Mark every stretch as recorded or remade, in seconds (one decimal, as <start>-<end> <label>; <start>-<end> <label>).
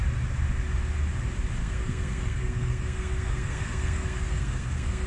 0.0-1.6 recorded; 1.6-5.1 remade